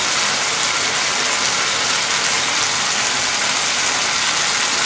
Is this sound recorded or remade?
recorded